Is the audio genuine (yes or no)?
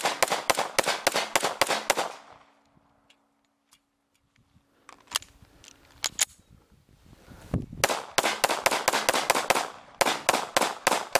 yes